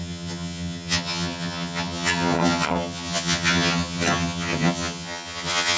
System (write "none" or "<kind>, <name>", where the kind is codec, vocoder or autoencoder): vocoder, HiFi-GAN